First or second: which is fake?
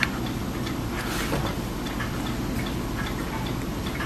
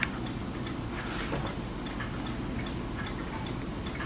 second